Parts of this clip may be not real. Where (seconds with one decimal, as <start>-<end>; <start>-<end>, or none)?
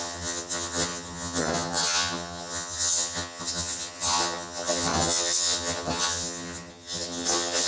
0.0-7.7